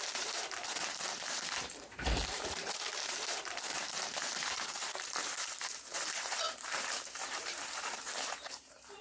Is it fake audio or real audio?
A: fake